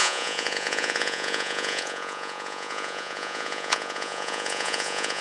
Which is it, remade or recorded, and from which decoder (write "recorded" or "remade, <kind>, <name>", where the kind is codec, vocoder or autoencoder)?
remade, vocoder, Vocos